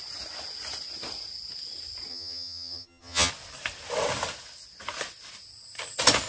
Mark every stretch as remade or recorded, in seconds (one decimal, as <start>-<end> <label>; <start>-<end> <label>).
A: 0.0-2.1 recorded; 2.1-3.3 remade; 3.3-6.3 recorded